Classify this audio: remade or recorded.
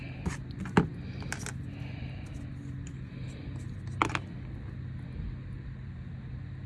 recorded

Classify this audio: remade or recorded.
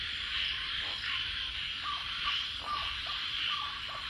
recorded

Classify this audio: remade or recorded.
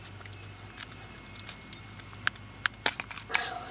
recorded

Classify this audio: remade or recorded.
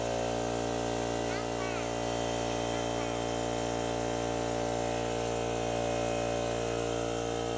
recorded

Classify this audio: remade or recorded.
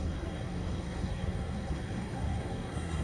remade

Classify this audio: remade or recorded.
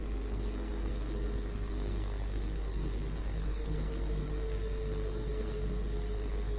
remade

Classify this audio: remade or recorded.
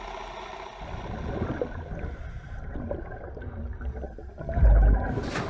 recorded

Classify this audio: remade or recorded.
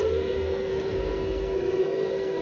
remade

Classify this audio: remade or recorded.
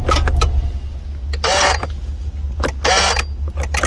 recorded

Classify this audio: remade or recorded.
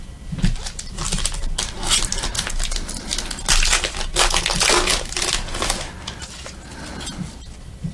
recorded